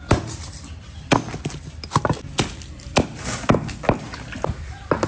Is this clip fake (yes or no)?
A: no